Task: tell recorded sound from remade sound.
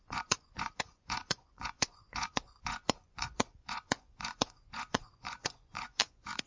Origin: remade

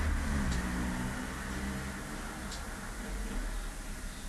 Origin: recorded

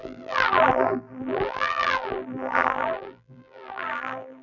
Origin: remade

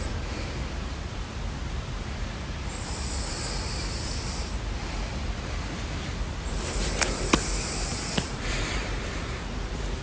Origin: remade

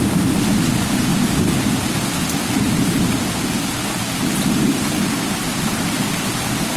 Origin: recorded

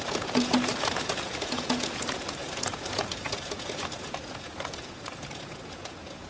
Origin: remade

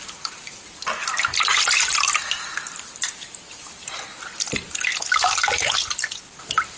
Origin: recorded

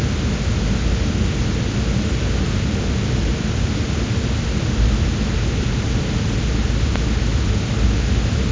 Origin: recorded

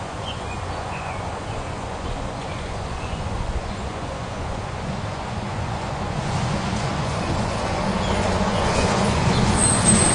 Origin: remade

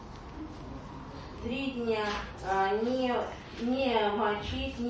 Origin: recorded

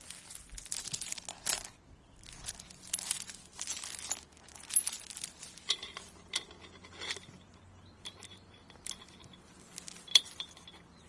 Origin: recorded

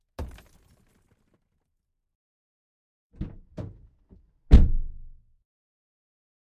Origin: recorded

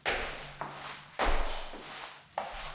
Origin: recorded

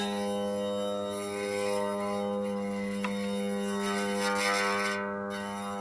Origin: recorded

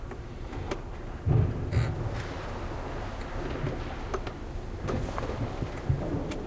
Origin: recorded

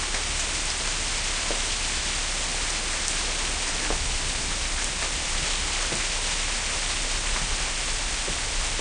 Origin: recorded